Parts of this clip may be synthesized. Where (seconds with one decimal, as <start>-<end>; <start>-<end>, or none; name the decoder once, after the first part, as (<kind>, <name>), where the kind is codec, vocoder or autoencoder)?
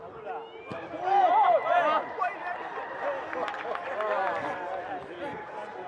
none